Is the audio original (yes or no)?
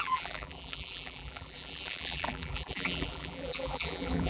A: no